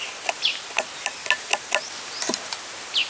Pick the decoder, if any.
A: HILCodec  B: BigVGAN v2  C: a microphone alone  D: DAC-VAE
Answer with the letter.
C